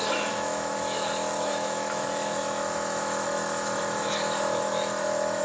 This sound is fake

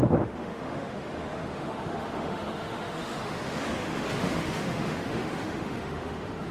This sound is fake